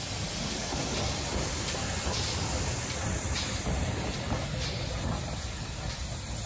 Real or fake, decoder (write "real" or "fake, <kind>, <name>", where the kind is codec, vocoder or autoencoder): real